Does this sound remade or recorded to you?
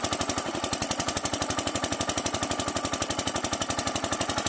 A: recorded